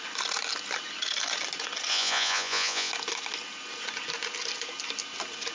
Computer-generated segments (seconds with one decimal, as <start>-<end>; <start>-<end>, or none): 1.9-2.9